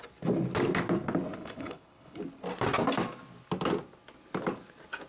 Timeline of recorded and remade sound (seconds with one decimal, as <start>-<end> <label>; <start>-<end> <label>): 0.0-1.4 recorded; 1.4-2.2 remade; 2.2-5.1 recorded